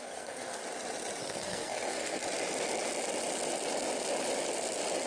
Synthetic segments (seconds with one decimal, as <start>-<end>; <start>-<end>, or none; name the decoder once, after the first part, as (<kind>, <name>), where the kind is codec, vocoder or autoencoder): 0.0-0.6 (codec, SNAC); 1.2-2.2